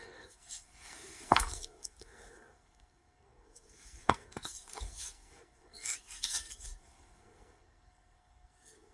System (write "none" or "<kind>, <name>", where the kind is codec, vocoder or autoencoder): codec, SNAC